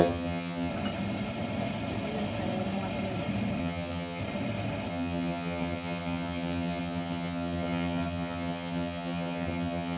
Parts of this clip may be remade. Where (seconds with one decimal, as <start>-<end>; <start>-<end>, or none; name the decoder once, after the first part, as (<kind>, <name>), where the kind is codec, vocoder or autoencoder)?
0.0-0.7 (vocoder, HiFi-GAN); 3.6-4.2; 4.9-10.0